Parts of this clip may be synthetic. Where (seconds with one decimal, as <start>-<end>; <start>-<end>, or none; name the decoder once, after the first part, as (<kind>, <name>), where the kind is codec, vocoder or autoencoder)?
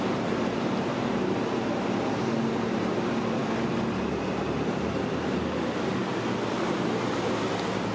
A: none